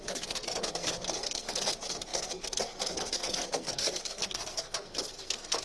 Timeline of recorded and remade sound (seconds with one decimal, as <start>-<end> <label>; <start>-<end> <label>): 0.0-5.6 remade